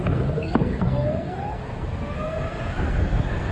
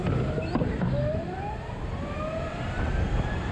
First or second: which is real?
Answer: second